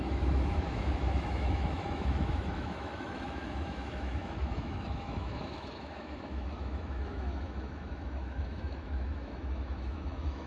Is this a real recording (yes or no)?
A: no